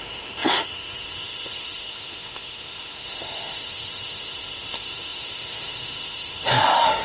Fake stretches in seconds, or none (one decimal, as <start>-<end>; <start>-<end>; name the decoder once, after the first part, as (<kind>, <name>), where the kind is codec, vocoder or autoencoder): 0.0-7.0 (autoencoder, DAC-VAE)